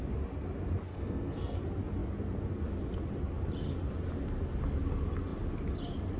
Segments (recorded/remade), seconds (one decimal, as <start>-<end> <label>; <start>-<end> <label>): 0.0-0.9 recorded; 0.9-1.6 remade; 1.6-6.2 recorded